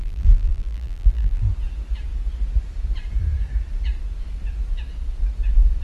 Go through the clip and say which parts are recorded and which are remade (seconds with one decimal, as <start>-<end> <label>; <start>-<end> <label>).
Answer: 0.0-1.4 remade; 1.4-5.8 recorded